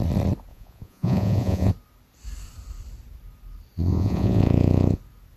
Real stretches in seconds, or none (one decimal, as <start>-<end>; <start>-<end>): 0.0-0.5; 1.7-3.9; 5.0-5.4